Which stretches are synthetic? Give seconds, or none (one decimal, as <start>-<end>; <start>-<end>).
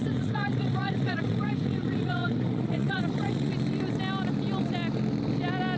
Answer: 0.0-3.5